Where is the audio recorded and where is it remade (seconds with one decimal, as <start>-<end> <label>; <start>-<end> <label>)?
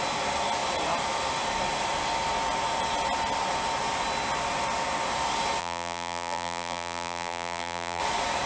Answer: 0.0-5.6 recorded; 5.6-8.0 remade; 8.0-8.5 recorded